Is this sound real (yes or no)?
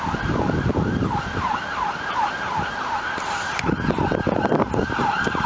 yes